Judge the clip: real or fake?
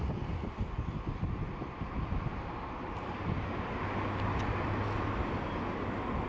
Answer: real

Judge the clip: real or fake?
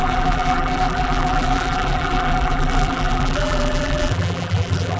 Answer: fake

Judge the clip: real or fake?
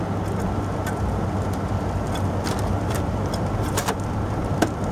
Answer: real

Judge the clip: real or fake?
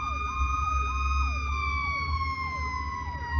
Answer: real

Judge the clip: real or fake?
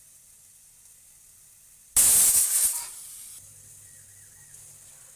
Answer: real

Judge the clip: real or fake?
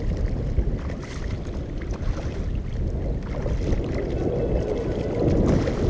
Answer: real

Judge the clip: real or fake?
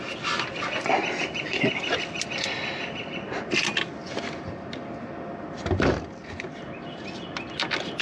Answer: real